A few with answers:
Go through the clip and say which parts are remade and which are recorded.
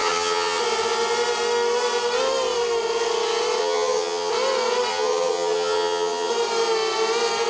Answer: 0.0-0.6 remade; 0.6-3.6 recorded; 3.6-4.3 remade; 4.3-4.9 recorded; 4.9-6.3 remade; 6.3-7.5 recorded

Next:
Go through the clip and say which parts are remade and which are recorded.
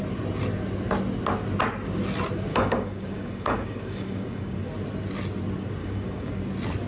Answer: 0.0-2.5 recorded; 2.5-4.6 remade; 4.6-5.8 recorded; 5.8-6.3 remade; 6.3-6.9 recorded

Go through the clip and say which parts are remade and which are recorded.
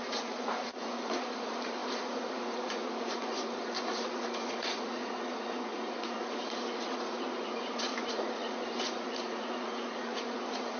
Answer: 0.0-10.8 remade